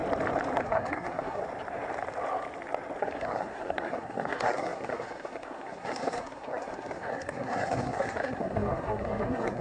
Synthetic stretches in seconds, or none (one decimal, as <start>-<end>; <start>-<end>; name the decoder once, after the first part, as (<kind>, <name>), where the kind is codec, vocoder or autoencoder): 0.6-1.4 (codec, SNAC); 3.0-9.6